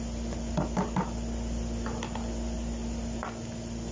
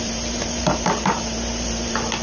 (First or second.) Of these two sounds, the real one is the first